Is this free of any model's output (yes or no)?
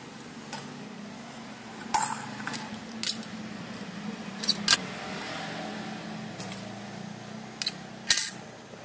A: yes